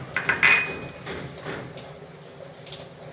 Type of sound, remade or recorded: recorded